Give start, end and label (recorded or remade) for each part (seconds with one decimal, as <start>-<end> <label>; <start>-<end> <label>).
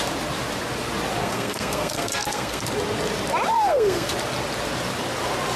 0.0-1.2 recorded; 1.2-2.6 remade; 2.6-3.5 recorded; 3.5-4.1 remade; 4.1-5.6 recorded